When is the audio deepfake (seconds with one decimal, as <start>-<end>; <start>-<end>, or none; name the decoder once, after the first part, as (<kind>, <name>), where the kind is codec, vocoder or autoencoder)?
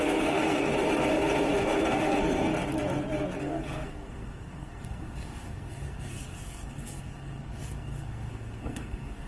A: 0.0-0.7 (codec, SNAC); 1.6-2.5; 3.4-9.3